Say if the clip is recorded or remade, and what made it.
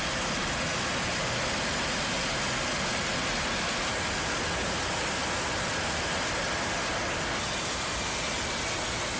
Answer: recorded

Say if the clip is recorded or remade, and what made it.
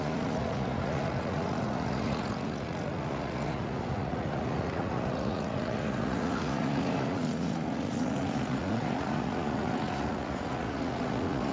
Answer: remade, vocoder, Vocos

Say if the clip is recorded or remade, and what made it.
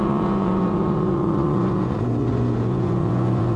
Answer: remade, vocoder, Vocos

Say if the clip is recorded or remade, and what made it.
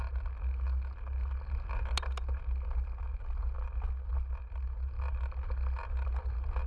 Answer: recorded